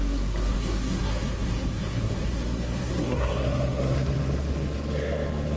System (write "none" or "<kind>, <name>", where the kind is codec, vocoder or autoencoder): codec, SNAC